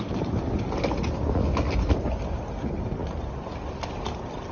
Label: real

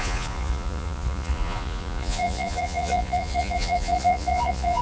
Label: fake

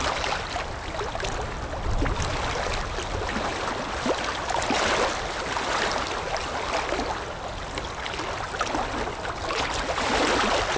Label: real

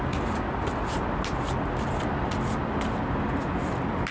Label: real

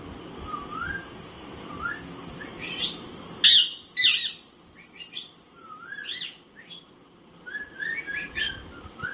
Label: real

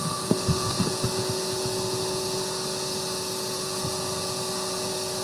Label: fake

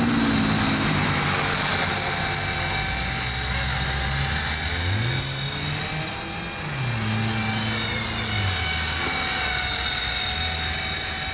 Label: real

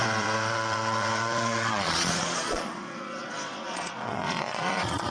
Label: fake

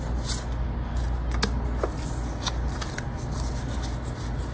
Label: real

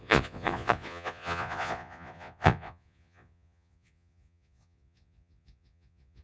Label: fake